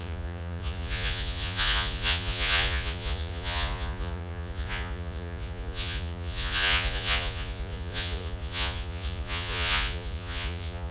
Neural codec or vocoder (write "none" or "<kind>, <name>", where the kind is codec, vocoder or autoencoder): vocoder, Vocos